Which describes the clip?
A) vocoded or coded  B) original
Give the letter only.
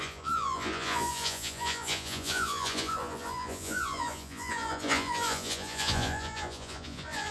A